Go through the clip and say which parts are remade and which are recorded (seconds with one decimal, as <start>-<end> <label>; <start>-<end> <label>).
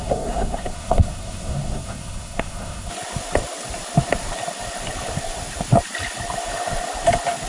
0.0-2.9 remade; 2.9-7.5 recorded